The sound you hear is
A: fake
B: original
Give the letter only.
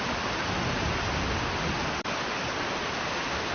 B